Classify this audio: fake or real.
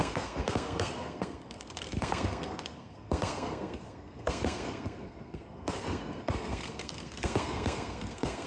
fake